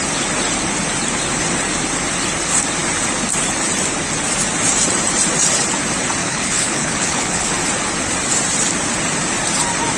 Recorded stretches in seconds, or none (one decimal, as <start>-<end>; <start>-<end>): 0.0-6.2; 7.5-10.0